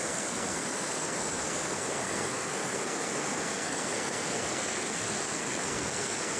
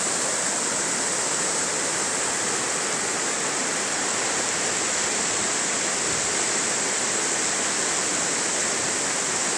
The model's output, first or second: first